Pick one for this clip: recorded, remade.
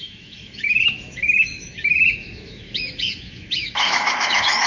remade